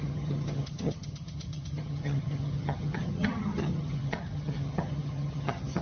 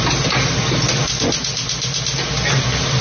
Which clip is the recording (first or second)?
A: second